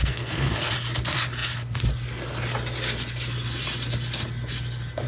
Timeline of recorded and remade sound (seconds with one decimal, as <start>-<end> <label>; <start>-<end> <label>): 0.0-0.7 remade; 0.7-5.1 recorded